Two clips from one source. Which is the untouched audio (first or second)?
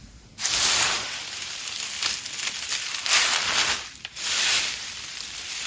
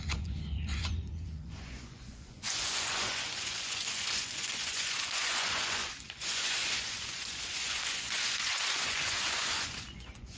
first